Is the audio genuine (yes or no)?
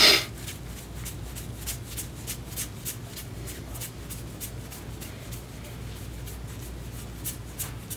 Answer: yes